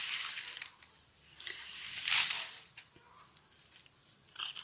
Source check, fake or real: fake